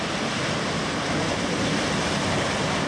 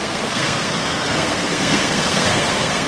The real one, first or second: first